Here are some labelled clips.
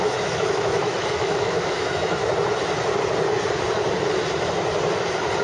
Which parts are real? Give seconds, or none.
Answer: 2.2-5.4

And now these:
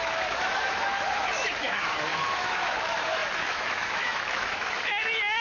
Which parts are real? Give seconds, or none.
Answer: none

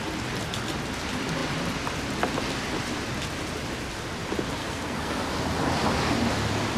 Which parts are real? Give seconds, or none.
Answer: 0.0-4.6; 5.2-6.8

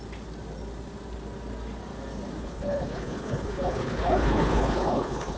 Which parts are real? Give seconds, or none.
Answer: 0.0-2.4

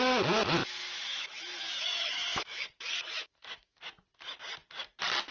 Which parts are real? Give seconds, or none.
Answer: 0.0-0.6; 3.8-5.3